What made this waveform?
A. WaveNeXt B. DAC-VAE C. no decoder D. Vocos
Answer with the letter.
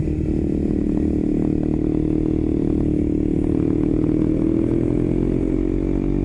C